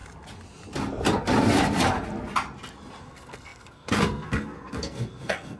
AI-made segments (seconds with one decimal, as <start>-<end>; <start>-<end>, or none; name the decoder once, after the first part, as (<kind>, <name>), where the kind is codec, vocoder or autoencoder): 3.0-5.6 (codec, SNAC)